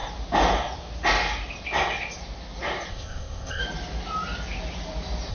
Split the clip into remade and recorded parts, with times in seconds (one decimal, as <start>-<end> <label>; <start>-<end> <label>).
0.0-2.9 recorded; 2.9-3.6 remade; 3.6-5.3 recorded